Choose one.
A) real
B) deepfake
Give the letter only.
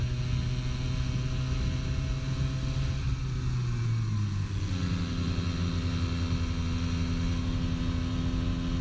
A